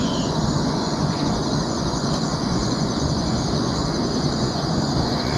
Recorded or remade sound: remade